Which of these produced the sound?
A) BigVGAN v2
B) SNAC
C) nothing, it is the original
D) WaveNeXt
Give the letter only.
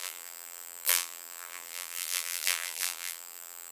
A